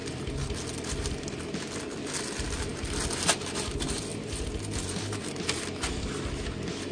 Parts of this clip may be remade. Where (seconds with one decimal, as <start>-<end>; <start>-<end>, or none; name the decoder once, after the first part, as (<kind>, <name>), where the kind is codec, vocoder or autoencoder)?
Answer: none